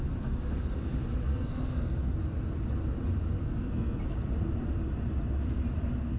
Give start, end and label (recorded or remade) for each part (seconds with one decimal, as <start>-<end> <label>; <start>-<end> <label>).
0.0-1.3 recorded; 1.3-2.1 remade; 2.1-3.4 recorded; 3.4-4.0 remade; 4.0-6.2 recorded